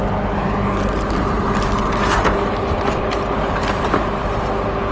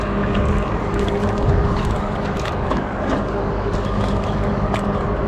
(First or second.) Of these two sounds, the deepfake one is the second